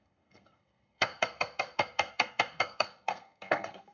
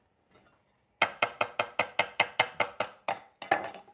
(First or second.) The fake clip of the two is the first